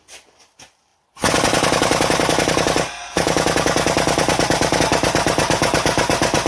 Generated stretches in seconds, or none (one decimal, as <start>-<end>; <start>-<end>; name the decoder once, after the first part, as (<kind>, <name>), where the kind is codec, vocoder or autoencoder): none